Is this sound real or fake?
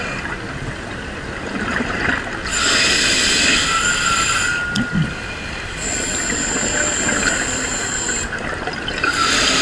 real